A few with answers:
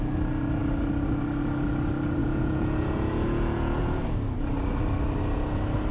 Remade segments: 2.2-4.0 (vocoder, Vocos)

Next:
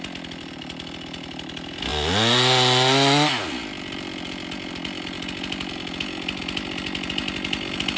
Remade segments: none

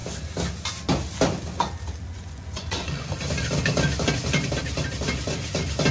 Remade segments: 2.1-3.1 (vocoder, Vocos)

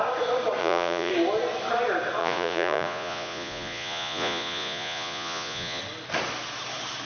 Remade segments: 0.6-1.1 (vocoder, Vocos); 2.2-5.8